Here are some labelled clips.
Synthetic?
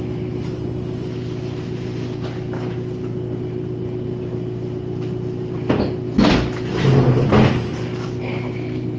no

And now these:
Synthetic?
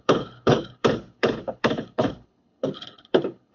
yes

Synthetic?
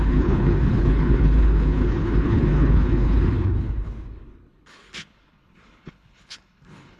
yes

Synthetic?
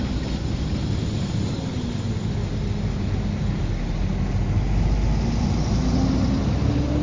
no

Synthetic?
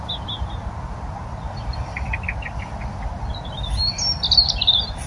no